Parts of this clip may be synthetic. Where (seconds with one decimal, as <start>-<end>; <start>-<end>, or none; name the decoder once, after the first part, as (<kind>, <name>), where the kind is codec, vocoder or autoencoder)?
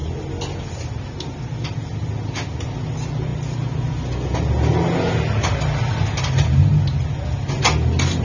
none